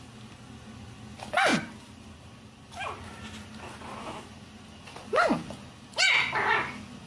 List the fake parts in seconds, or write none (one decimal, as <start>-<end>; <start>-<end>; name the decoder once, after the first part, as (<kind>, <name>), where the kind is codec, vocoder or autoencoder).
none